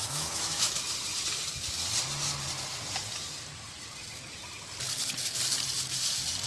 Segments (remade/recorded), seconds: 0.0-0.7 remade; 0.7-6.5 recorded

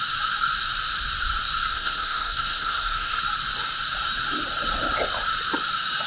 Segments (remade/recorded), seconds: 0.0-1.7 recorded; 1.7-3.2 remade; 3.2-6.1 recorded

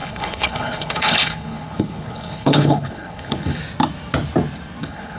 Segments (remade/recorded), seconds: 0.0-3.6 remade; 3.6-4.8 recorded; 4.8-5.2 remade

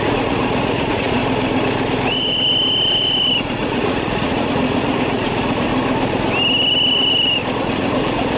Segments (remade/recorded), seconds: 0.0-1.2 remade; 1.2-3.4 recorded; 3.4-5.7 remade; 5.7-7.6 recorded; 7.6-8.4 remade

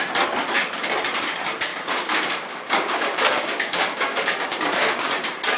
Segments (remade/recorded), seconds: 0.0-1.7 recorded; 1.7-5.1 remade; 5.1-5.6 recorded

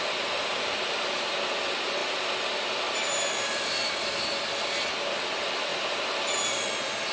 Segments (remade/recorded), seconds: 0.0-2.0 recorded; 2.0-4.2 remade; 4.2-7.1 recorded

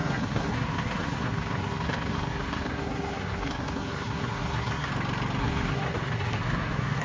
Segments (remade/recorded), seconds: 0.0-4.9 remade; 4.9-5.4 recorded; 5.4-7.0 remade